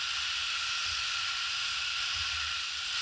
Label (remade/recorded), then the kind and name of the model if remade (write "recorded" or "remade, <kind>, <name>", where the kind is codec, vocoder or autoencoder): recorded